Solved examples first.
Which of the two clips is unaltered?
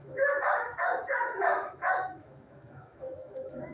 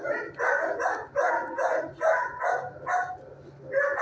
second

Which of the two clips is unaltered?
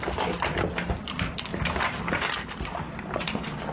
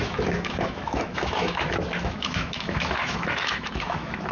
first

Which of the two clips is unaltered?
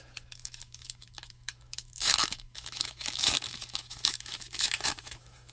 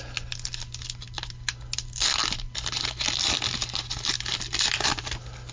second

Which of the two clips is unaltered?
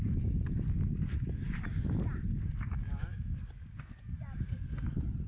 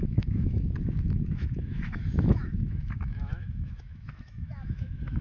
first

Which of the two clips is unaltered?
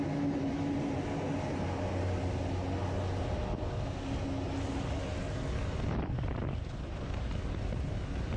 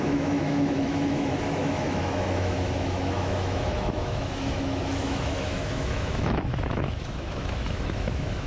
first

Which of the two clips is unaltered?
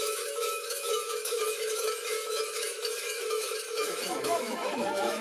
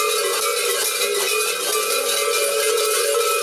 second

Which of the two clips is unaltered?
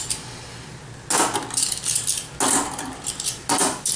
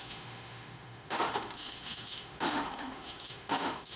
first